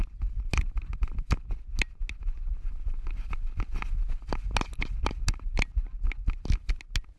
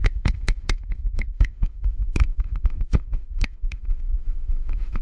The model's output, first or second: second